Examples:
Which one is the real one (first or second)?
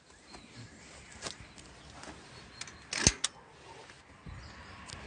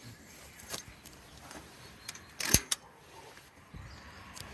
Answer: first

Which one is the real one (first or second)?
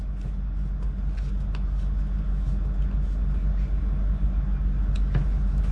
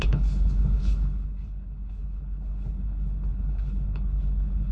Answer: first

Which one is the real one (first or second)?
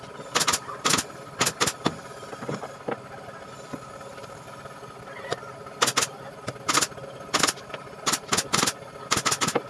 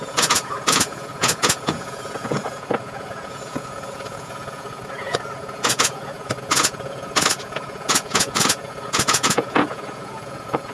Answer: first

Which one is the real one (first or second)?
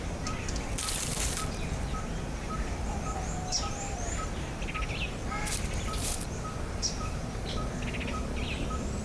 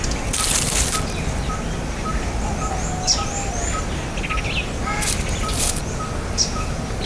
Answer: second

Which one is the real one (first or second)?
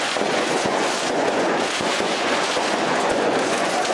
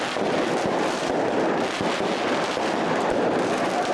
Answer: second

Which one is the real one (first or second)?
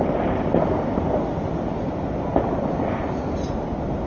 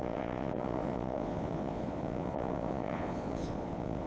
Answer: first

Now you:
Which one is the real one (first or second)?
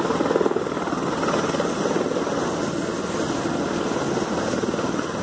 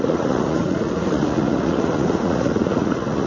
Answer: first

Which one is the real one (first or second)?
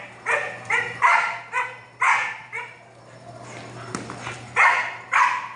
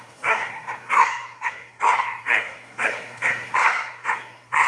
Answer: first